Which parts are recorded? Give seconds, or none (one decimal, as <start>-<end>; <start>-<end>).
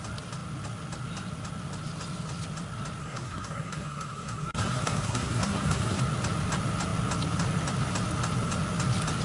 0.0-3.0; 6.0-9.2